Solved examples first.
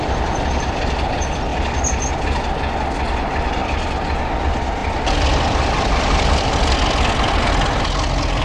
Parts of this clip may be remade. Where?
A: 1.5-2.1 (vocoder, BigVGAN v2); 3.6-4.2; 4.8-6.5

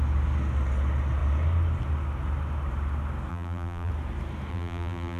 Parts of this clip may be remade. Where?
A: 3.3-3.9 (vocoder, BigVGAN v2); 4.5-5.2